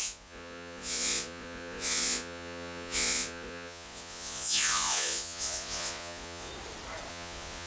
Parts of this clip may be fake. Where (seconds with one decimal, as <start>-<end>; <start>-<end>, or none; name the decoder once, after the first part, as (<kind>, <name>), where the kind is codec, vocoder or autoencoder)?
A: 0.0-6.5 (vocoder, Vocos); 7.1-7.7